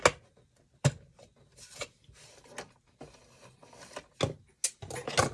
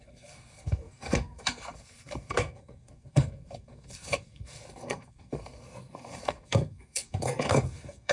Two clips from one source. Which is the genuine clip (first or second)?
first